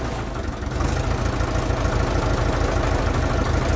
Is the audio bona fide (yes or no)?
yes